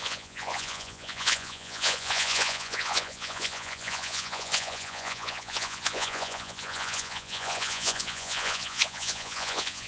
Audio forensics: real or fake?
fake